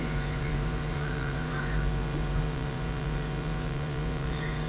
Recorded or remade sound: remade